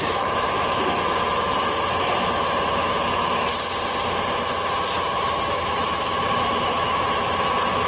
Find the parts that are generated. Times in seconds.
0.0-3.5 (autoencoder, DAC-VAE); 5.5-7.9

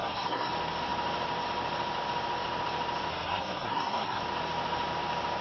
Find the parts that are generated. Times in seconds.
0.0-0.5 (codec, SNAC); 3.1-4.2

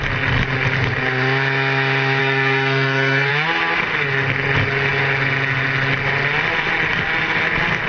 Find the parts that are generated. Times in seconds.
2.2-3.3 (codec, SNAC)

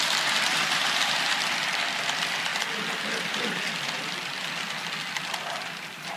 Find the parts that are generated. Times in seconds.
none